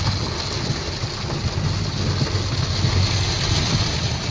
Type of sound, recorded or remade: recorded